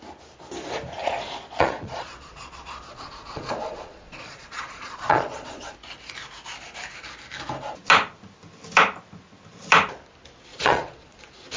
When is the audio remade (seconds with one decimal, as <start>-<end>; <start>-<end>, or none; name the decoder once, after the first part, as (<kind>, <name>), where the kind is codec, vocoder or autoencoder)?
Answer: 1.0-5.7 (vocoder, Vocos); 10.5-11.2